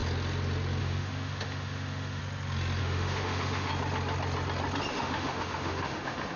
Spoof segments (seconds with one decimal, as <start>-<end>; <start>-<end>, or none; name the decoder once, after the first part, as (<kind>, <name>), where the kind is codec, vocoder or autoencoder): 0.8-2.2 (autoencoder, DAC-VAE); 2.8-3.7; 4.9-6.4